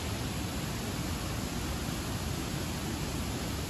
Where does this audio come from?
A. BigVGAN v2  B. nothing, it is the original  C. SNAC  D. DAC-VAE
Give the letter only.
B